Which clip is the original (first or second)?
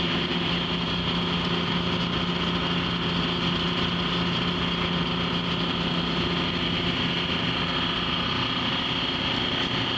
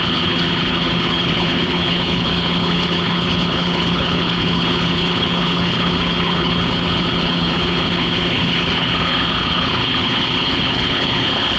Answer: first